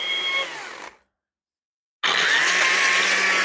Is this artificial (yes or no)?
no